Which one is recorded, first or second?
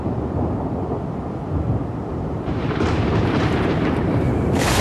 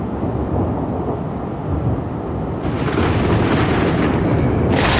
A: second